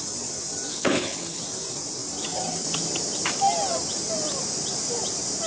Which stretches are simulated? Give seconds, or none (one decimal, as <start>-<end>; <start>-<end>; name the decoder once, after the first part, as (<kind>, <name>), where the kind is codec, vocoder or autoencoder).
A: 0.7-1.4 (codec, HILCodec)